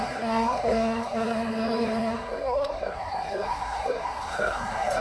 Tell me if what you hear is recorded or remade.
remade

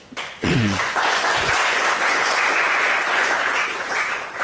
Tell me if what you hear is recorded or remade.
remade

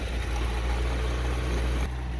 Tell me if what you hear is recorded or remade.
recorded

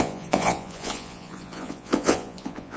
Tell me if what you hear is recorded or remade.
remade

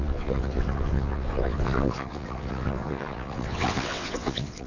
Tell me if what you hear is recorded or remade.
remade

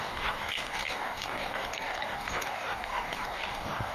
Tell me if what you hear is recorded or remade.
remade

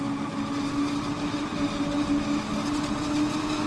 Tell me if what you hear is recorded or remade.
recorded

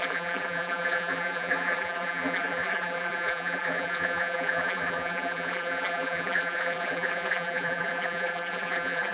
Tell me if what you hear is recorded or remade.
remade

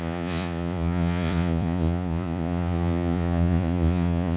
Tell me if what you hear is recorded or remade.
remade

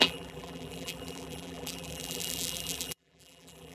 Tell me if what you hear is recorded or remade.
remade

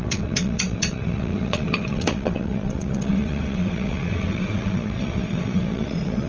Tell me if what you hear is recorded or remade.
remade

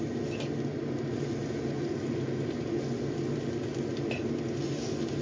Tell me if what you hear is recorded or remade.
recorded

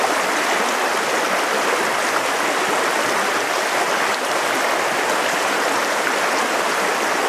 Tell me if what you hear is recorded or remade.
recorded